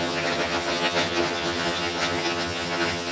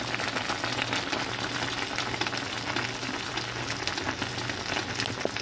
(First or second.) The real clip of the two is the second